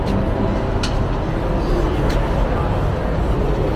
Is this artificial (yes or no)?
no